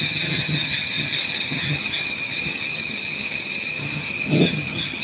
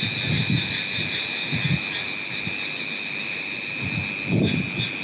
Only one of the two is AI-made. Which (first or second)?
first